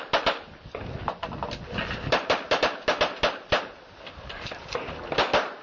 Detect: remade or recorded recorded